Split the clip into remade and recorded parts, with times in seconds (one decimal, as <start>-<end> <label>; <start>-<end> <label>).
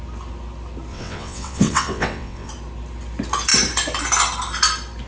0.0-0.9 recorded; 0.9-2.5 remade; 2.5-5.1 recorded